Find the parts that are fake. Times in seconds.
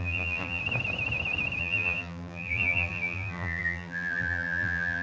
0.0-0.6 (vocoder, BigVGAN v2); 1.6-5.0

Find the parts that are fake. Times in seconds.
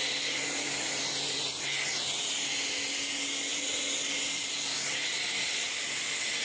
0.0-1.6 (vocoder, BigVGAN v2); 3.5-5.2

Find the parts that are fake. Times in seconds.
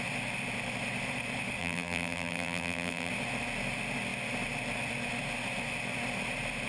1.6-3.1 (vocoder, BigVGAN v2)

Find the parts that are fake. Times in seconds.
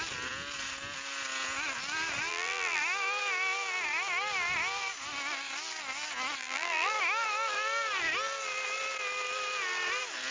2.3-2.8 (vocoder, BigVGAN v2); 6.4-6.9